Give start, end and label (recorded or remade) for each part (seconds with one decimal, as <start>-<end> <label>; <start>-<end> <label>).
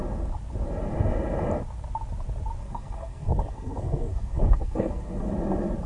0.0-2.6 recorded; 2.6-5.3 remade; 5.3-5.9 recorded